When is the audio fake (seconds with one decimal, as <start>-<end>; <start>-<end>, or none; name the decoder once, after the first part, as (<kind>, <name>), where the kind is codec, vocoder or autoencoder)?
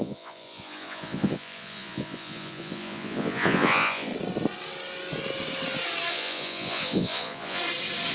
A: 0.0-4.1 (vocoder, Vocos); 6.1-7.6